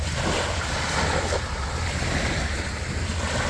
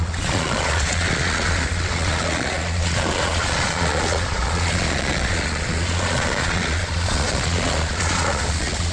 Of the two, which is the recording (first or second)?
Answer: first